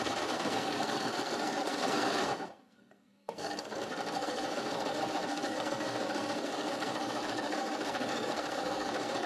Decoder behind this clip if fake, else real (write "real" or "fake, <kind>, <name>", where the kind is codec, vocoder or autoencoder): fake, codec, SNAC